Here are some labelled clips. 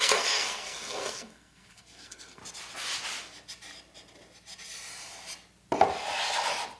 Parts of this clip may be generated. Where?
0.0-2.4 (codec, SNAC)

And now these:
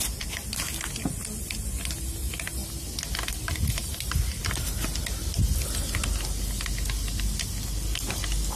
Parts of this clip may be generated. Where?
none

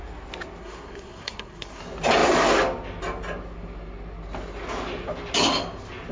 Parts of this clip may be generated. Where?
0.6-1.8 (codec, SNAC)

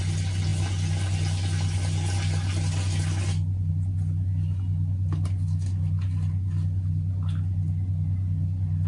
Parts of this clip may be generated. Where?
none

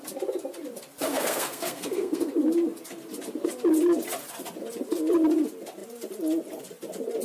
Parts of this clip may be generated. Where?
1.1-2.3 (codec, SNAC)

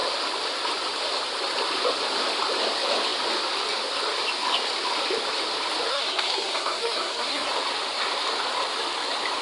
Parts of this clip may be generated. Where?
5.9-7.5 (codec, SNAC)